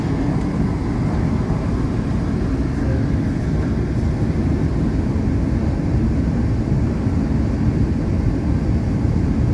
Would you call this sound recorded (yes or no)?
yes